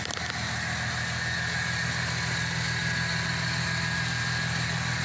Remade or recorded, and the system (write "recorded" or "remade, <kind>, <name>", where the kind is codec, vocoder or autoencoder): recorded